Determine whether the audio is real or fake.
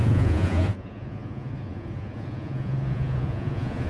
fake